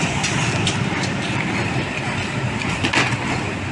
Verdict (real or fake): real